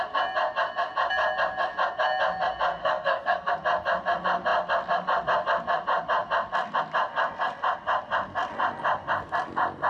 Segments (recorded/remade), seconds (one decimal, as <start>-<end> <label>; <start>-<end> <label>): 0.0-2.8 recorded; 2.8-3.5 remade; 3.5-9.9 recorded